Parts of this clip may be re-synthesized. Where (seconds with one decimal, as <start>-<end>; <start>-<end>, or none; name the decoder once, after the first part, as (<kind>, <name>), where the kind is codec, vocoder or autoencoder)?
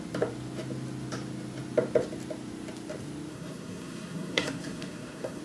3.3-5.4 (codec, SNAC)